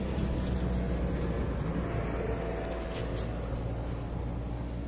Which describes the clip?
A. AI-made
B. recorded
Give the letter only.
B